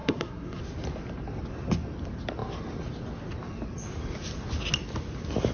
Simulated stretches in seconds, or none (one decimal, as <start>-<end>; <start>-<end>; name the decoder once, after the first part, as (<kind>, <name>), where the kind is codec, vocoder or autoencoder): 0.0-0.6 (codec, SNAC)